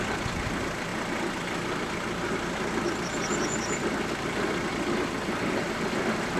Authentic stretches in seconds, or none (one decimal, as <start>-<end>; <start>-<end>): 0.0-6.4